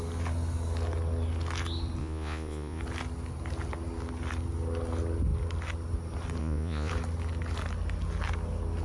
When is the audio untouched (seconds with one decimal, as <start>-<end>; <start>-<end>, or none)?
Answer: 0.0-2.0; 2.8-6.4; 6.9-8.8